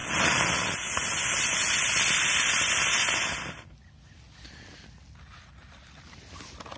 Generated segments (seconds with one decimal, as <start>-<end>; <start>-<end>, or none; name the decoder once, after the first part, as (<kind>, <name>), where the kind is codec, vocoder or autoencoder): none